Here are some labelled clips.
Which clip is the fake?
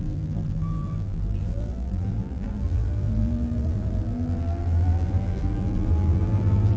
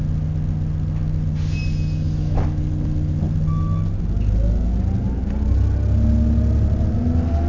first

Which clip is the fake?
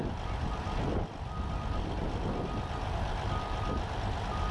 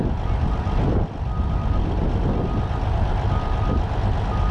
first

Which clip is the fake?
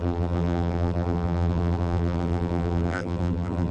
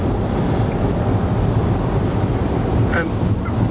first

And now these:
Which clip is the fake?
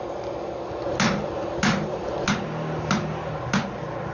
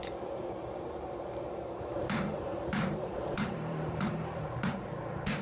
second